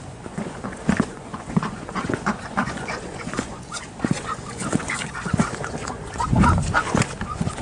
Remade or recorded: remade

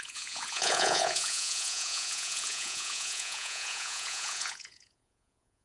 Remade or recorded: remade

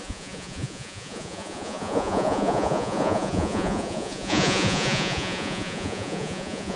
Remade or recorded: remade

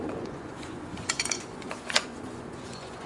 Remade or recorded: remade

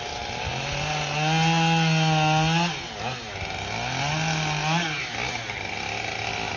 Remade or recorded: recorded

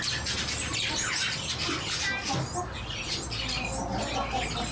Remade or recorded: recorded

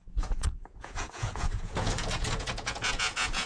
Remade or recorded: remade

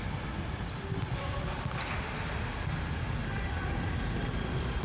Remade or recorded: recorded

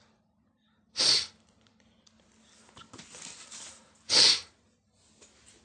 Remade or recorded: recorded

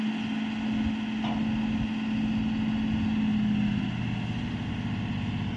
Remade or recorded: recorded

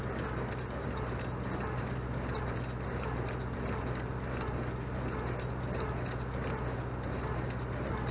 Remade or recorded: recorded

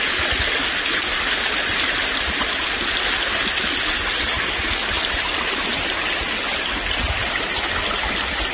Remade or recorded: recorded